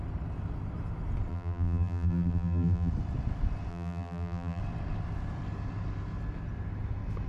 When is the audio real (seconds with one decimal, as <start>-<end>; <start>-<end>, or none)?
0.0-1.3; 2.9-3.7; 4.6-7.3